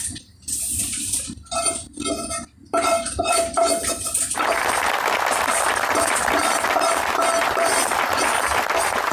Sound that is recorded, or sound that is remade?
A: recorded